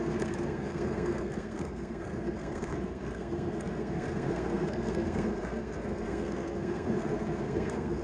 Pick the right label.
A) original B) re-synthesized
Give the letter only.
B